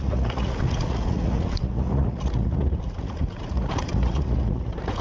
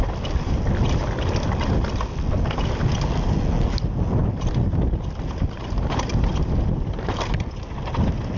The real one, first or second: second